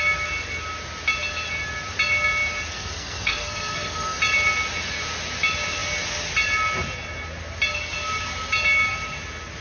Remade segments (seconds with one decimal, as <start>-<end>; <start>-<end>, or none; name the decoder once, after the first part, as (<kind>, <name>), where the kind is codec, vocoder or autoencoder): 2.7-4.2 (codec, SNAC)